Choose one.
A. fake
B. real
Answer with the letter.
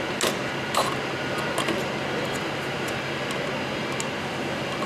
B